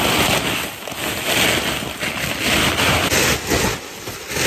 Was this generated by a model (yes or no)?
no